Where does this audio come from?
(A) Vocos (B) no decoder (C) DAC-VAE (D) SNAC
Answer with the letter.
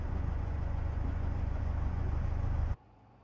A